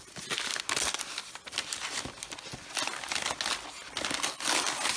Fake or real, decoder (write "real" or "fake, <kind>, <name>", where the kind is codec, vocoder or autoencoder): real